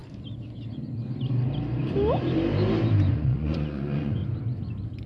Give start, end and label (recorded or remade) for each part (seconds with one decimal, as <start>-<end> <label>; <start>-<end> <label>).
0.0-3.1 recorded; 3.1-4.2 remade; 4.2-5.1 recorded